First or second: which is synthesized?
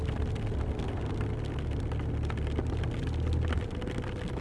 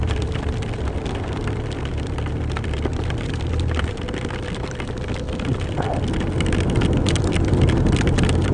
second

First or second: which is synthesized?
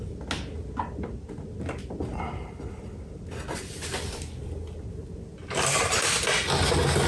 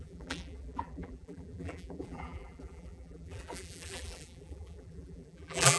second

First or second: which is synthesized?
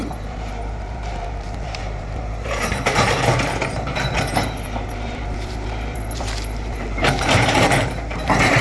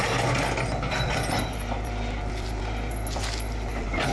first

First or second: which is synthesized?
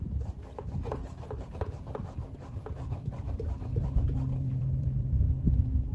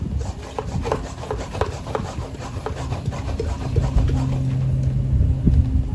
first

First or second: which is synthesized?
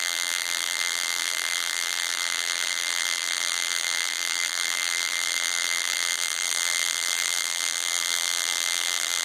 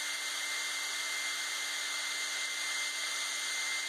first